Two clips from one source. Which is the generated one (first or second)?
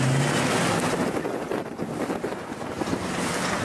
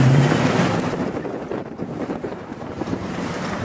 second